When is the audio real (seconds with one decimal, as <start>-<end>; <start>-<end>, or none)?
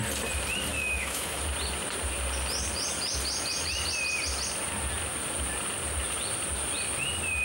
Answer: 0.0-0.7; 1.4-7.4